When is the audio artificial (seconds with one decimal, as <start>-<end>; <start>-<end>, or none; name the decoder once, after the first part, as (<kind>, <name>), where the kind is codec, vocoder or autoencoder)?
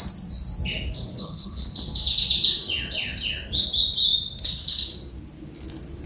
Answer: 1.1-1.7 (codec, HILCodec)